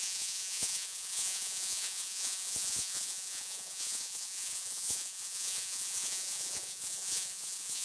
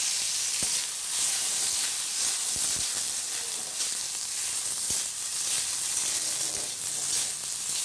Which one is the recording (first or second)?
second